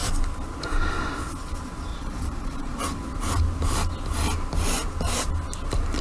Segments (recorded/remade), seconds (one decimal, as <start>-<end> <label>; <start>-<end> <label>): 0.0-1.9 recorded; 1.9-2.8 remade; 2.8-6.0 recorded